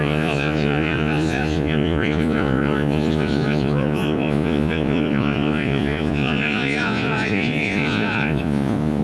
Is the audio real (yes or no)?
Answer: no